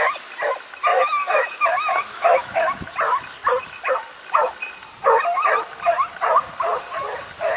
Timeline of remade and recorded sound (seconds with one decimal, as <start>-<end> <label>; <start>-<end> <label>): 0.0-0.9 recorded; 0.9-2.9 remade; 2.9-7.6 recorded